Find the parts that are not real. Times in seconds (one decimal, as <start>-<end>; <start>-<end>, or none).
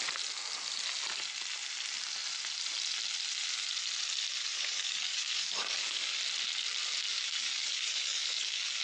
4.4-6.2; 7.1-8.8